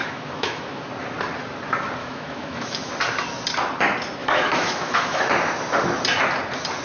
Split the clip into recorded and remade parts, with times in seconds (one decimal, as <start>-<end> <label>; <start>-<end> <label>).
0.0-0.8 remade; 0.8-2.0 recorded; 2.0-2.9 remade; 2.9-4.2 recorded; 4.2-5.2 remade; 5.2-6.8 recorded